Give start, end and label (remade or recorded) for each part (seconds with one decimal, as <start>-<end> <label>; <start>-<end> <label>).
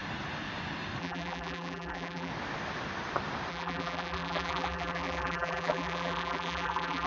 0.0-1.0 recorded; 1.0-2.3 remade; 2.3-3.5 recorded; 3.5-7.1 remade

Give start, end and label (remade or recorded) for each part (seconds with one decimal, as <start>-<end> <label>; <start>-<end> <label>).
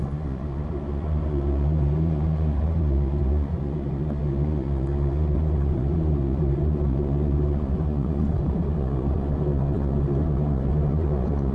0.0-11.5 remade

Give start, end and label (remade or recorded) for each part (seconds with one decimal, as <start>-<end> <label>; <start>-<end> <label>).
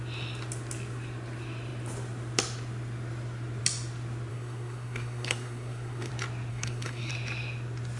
0.0-4.3 recorded; 4.3-6.1 remade; 6.1-6.5 recorded; 6.5-7.1 remade; 7.1-8.0 recorded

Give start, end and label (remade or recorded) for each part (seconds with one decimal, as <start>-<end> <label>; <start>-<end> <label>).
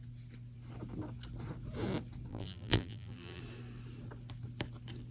0.0-2.3 recorded; 2.3-3.4 remade; 3.4-5.1 recorded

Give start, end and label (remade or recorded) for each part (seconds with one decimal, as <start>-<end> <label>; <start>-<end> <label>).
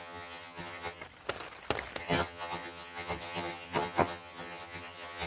0.0-1.0 remade; 1.0-2.0 recorded; 2.0-5.3 remade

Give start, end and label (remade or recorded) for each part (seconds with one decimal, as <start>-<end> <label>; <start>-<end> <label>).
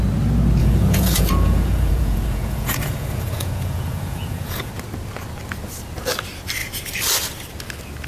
0.0-0.6 recorded; 0.6-4.7 remade; 4.7-8.1 recorded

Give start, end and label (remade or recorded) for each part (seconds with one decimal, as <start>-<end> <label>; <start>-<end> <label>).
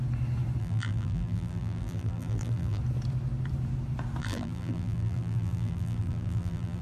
0.0-0.6 recorded; 0.6-2.8 remade; 2.8-4.2 recorded; 4.2-6.8 remade